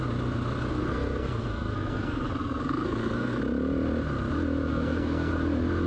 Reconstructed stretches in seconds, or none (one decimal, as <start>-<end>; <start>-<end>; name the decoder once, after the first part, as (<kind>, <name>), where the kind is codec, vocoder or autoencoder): 0.8-3.4 (codec, SNAC); 4.7-5.3